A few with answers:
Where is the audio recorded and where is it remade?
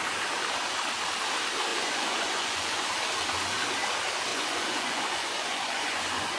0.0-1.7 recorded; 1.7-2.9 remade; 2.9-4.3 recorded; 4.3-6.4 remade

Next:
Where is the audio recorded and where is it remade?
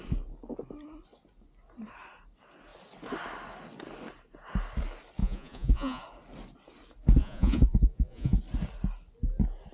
0.0-5.2 recorded; 5.2-6.0 remade; 6.0-7.2 recorded; 7.2-8.4 remade; 8.4-9.7 recorded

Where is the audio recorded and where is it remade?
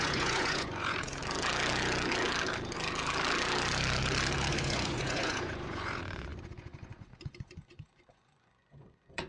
0.0-1.2 remade; 1.2-4.5 recorded; 4.5-9.3 remade